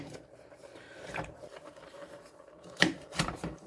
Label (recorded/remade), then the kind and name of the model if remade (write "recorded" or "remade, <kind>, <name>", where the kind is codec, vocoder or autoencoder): remade, vocoder, BigVGAN v2